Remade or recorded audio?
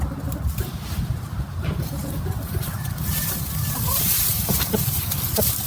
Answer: remade